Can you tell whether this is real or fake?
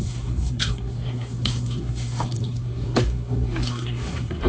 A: fake